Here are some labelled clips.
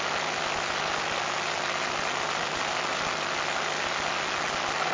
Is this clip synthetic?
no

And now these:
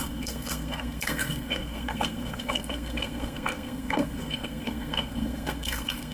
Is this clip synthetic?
yes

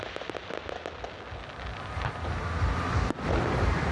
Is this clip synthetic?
no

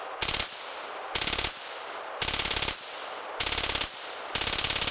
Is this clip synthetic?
no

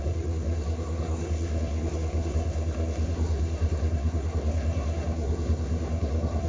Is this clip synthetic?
yes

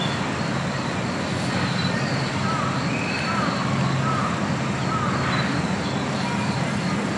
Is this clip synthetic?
no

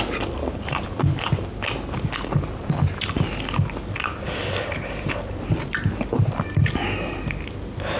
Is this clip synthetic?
no